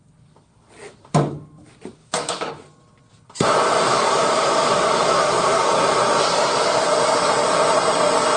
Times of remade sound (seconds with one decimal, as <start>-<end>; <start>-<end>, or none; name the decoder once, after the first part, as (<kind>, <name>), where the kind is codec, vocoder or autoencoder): 2.0-2.5 (codec, DAC); 3.9-5.7